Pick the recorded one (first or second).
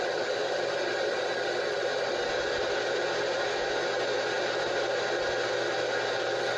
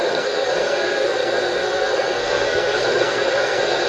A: first